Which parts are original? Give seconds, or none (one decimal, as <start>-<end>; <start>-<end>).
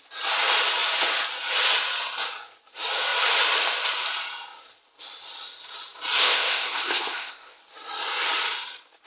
0.0-6.2; 7.6-9.1